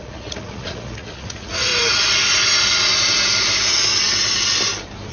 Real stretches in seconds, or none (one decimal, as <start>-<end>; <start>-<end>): 1.7-5.1